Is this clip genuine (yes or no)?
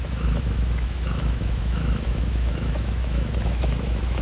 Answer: no